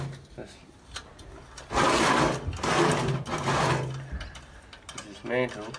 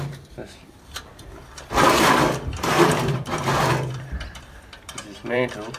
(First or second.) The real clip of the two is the first